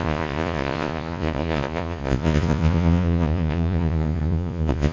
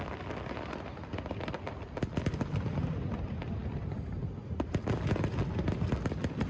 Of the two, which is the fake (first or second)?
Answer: first